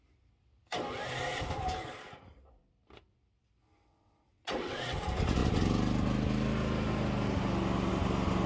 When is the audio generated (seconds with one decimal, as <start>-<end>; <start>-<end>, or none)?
3.9-5.0